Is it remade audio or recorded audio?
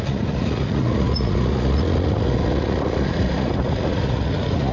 remade